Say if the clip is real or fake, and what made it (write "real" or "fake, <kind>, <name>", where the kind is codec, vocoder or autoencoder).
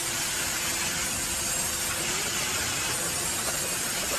real